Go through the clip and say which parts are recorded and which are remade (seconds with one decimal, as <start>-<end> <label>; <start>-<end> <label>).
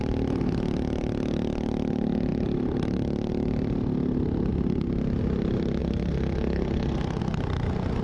0.0-5.8 recorded; 5.8-7.2 remade; 7.2-8.0 recorded